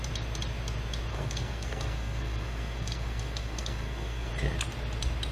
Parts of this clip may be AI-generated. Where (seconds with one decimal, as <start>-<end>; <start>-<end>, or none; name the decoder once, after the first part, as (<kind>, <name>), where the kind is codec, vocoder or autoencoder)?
1.1-4.3 (codec, SNAC)